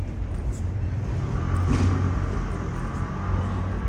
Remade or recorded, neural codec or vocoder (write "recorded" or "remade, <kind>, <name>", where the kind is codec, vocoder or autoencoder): recorded